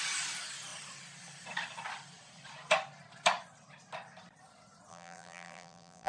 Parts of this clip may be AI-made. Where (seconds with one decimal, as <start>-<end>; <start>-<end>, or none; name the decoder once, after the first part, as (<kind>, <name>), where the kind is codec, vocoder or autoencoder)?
4.9-6.1 (vocoder, BigVGAN v2)